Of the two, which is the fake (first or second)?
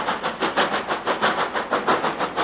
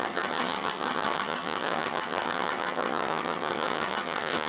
second